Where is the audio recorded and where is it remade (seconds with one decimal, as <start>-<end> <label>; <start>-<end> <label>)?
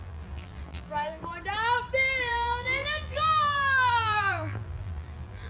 0.0-1.2 remade; 1.2-2.3 recorded; 2.3-5.5 remade